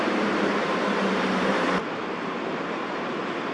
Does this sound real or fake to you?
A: fake